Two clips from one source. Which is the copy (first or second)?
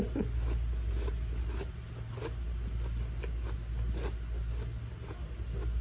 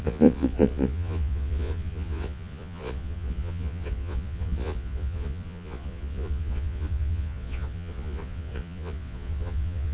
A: second